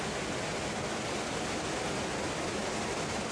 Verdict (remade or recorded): recorded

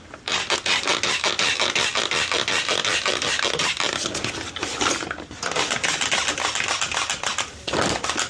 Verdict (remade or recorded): recorded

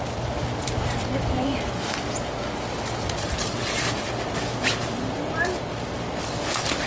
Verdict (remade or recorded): recorded